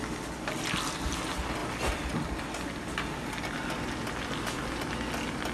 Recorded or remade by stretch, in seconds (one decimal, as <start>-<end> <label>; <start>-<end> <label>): 0.0-5.5 recorded